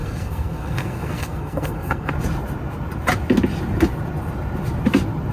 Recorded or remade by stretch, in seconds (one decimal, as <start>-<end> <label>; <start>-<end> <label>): 0.0-2.1 remade; 2.1-5.3 recorded